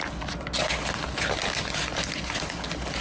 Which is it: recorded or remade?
recorded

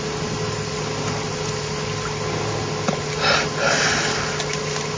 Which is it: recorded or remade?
recorded